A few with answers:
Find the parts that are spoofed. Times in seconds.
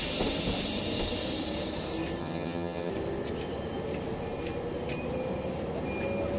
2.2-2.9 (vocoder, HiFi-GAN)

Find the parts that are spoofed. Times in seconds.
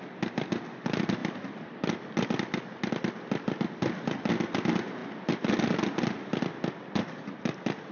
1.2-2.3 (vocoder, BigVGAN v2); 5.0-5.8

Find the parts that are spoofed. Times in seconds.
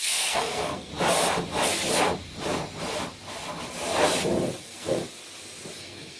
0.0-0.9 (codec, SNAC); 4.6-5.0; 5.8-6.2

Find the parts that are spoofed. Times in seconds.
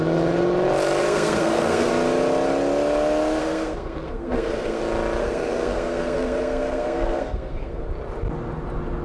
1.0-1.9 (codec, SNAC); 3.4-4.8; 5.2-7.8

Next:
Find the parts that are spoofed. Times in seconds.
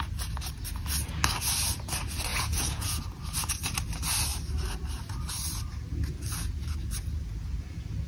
2.3-3.0 (vocoder, Vocos)